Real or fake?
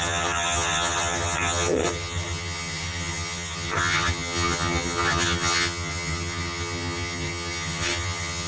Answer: fake